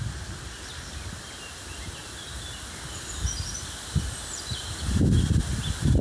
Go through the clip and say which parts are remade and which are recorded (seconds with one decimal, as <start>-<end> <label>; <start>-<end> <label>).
0.0-6.0 recorded

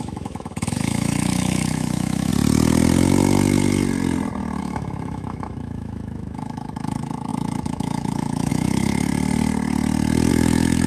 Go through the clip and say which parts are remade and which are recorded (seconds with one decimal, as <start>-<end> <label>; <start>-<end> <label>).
0.0-2.3 remade; 2.3-4.6 recorded; 4.6-9.1 remade; 9.1-10.3 recorded; 10.3-10.9 remade